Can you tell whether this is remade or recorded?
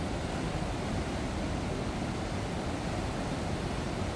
recorded